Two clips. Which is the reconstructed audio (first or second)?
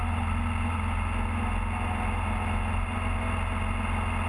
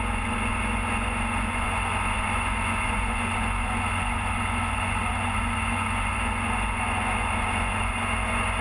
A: second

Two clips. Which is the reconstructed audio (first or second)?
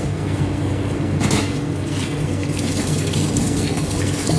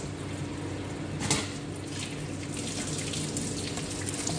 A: first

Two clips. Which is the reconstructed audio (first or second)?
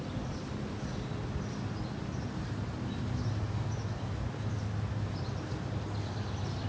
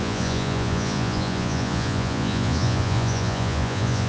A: second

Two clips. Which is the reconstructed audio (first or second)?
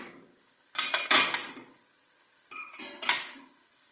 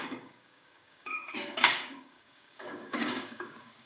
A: second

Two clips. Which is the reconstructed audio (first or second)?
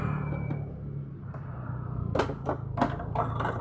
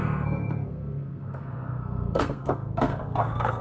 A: second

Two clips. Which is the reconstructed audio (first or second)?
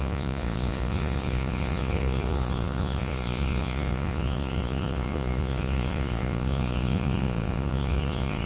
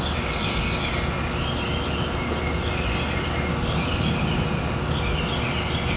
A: first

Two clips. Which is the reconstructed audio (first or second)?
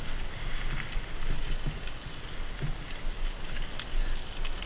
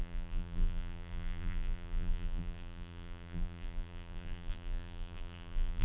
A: second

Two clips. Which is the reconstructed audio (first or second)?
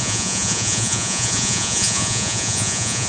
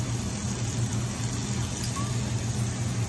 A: first